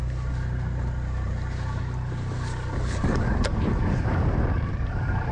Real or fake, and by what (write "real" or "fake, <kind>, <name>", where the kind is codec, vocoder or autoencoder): real